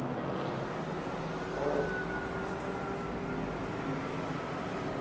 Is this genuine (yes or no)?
yes